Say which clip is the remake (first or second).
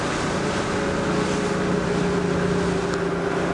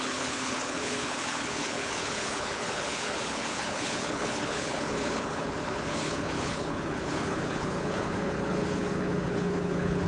second